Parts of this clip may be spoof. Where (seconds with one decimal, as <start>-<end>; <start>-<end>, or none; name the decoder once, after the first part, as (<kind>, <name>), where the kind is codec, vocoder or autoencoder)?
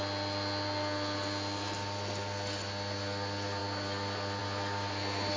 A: none